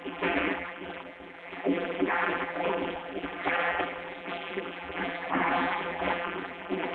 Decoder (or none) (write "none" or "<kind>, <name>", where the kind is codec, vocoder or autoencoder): vocoder, BigVGAN v2